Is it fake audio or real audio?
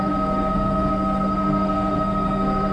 fake